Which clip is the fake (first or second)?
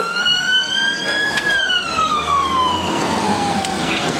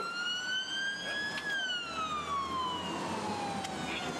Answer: first